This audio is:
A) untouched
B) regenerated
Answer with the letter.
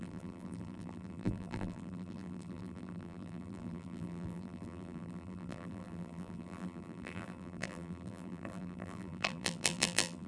B